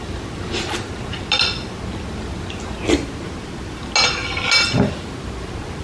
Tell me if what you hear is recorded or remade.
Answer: recorded